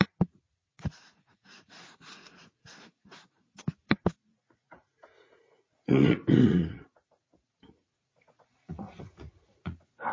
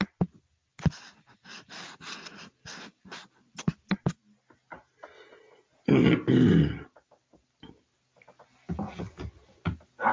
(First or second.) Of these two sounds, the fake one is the first